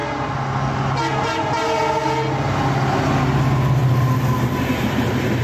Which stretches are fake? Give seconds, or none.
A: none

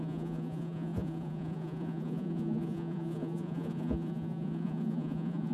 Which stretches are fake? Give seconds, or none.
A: 0.0-5.5

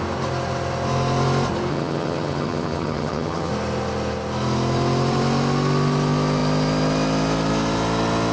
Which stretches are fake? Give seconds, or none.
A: 1.7-3.5

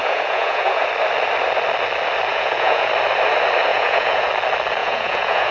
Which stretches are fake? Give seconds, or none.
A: 0.0-0.9; 2.3-2.9; 3.7-4.3; 4.8-5.5

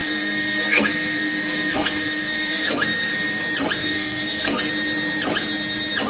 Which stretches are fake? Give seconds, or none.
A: 0.0-3.4; 3.8-4.7

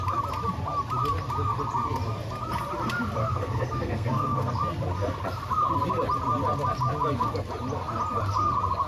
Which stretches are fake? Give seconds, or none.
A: 3.2-4.5